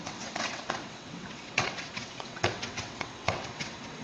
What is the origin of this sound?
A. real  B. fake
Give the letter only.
B